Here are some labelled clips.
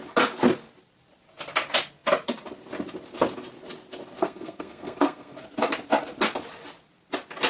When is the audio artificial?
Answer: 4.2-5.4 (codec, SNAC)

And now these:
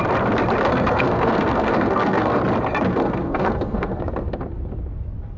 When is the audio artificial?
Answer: 0.6-2.4 (codec, SNAC); 2.9-4.0

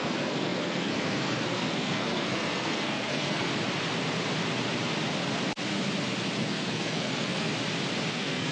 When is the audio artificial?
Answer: 0.0-3.5 (codec, SNAC); 6.4-7.5; 8.1-8.5

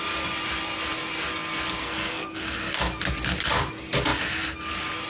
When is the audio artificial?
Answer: 1.8-2.7 (codec, SNAC)

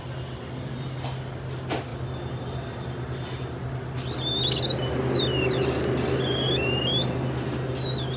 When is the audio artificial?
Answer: none